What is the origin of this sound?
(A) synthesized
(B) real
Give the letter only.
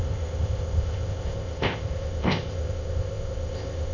A